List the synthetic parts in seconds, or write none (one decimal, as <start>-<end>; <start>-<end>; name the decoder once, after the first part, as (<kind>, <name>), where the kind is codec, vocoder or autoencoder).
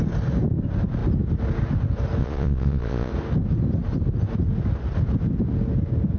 2.2-3.1 (vocoder, Vocos)